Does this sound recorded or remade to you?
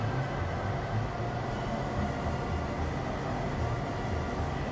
recorded